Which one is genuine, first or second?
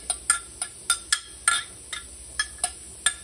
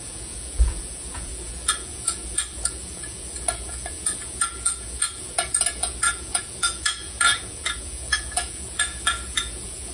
first